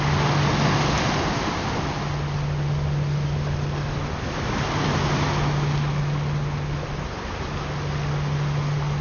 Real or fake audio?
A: real